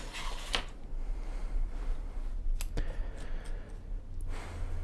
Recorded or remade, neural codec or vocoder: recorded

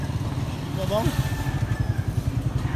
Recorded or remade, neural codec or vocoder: recorded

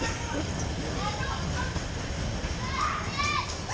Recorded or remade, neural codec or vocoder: recorded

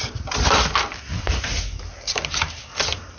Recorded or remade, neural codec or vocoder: recorded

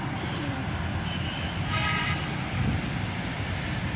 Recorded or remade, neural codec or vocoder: recorded